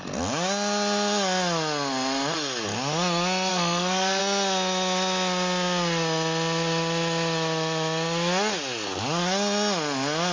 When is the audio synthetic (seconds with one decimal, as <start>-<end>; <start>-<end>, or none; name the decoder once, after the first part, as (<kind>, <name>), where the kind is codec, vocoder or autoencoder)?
3.5-4.2 (codec, SNAC)